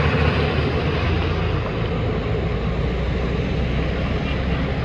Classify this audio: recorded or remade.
recorded